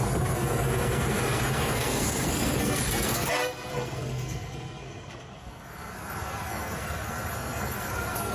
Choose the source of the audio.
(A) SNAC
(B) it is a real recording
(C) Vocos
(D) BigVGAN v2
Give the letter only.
A